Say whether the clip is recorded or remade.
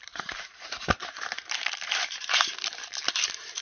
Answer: remade